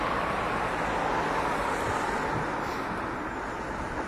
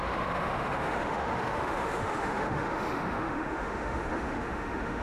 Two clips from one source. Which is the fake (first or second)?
second